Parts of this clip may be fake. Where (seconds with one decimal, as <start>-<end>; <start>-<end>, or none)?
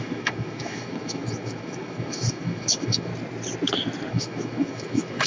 0.0-3.1; 4.1-5.3